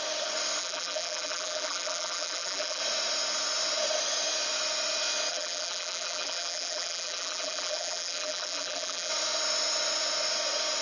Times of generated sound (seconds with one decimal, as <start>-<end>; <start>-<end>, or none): 0.6-2.8; 5.3-9.1